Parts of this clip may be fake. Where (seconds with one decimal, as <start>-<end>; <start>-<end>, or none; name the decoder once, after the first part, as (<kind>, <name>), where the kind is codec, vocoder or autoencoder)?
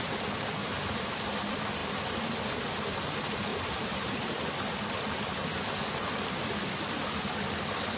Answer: 0.6-1.3 (vocoder, BigVGAN v2); 3.5-4.4